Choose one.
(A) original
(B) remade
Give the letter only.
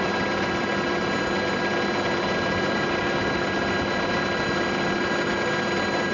A